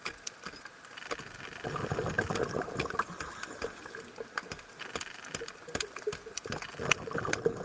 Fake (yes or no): no